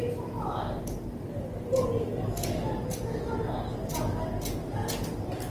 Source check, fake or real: real